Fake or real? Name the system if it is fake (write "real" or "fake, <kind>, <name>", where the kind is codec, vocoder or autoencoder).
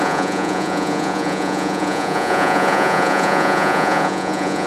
fake, vocoder, Vocos